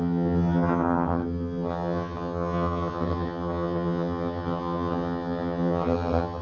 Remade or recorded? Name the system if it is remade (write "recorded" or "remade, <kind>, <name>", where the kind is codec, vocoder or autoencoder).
remade, vocoder, HiFi-GAN